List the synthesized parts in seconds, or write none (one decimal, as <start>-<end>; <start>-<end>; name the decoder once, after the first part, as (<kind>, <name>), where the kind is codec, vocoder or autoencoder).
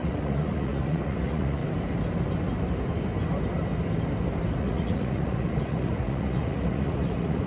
0.0-1.6 (vocoder, Vocos); 4.6-7.5